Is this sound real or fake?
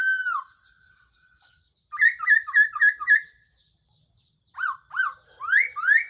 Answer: real